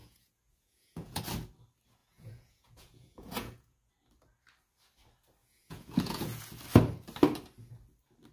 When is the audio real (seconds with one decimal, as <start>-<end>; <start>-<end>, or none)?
1.2-2.0; 3.9-5.4; 6.5-8.3

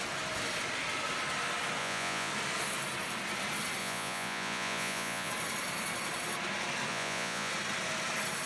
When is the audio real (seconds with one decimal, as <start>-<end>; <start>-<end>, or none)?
0.0-1.8; 2.3-3.8; 5.3-6.9; 7.5-8.5

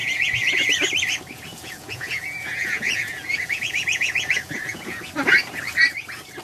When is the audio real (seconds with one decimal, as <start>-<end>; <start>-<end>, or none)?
0.5-1.5; 5.0-6.4